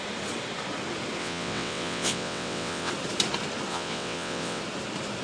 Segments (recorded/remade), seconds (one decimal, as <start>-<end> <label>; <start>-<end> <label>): 0.0-1.2 recorded; 1.2-2.9 remade; 2.9-3.7 recorded; 3.7-4.6 remade; 4.6-5.2 recorded